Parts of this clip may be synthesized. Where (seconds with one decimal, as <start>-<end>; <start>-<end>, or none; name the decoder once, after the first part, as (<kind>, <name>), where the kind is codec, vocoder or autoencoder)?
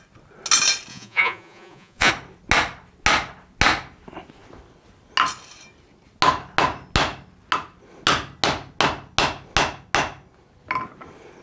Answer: 0.9-2.1 (vocoder, Vocos)